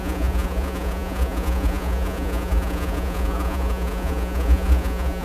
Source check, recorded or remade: remade